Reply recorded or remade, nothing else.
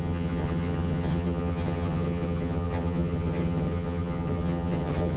remade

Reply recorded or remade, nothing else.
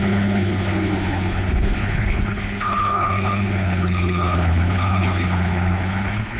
remade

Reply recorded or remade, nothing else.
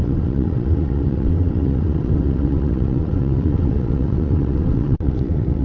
remade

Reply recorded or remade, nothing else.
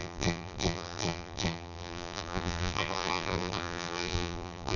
remade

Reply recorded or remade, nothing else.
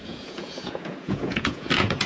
remade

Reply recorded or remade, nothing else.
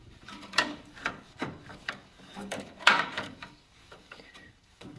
remade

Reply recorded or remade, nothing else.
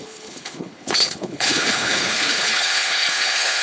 remade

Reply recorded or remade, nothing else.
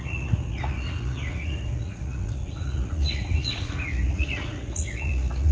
remade